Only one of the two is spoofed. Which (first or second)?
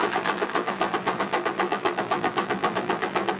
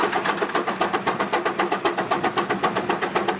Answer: first